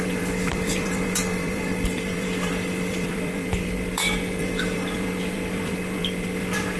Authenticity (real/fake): fake